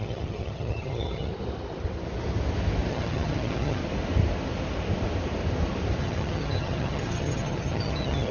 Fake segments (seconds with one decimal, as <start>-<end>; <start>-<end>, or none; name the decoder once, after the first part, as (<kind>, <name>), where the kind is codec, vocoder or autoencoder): 0.0-1.3 (vocoder, HiFi-GAN); 2.9-3.8; 6.0-8.3